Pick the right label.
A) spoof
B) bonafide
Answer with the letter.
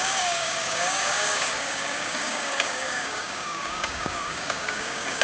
A